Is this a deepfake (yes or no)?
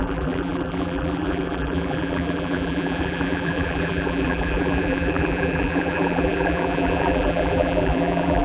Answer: yes